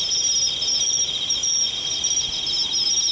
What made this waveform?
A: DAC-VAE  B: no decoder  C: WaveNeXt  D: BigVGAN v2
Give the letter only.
B